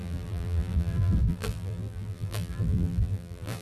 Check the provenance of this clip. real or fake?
fake